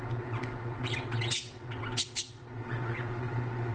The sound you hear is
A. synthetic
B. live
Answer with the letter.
A